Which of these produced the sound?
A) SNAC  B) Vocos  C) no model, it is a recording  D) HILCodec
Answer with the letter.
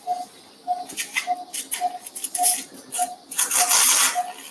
C